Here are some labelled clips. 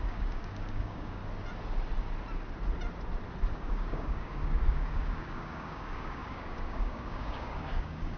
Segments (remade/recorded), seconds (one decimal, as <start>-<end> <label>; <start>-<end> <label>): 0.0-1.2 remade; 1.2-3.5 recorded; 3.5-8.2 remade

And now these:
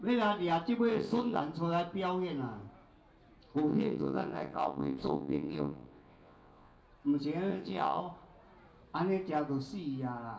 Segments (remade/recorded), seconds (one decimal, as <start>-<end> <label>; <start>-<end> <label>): 0.0-0.9 recorded; 0.9-1.4 remade; 1.4-3.7 recorded; 3.7-6.8 remade; 6.8-7.5 recorded; 7.5-8.0 remade; 8.0-10.4 recorded

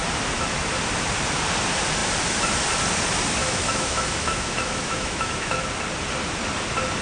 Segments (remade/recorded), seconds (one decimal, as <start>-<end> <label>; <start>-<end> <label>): 0.0-3.4 recorded; 3.4-5.6 remade; 5.6-7.0 recorded